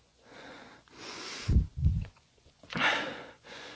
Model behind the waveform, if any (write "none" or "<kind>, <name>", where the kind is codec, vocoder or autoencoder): vocoder, Vocos